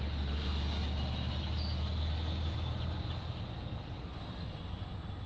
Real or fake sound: real